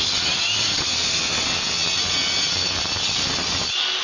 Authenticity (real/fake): real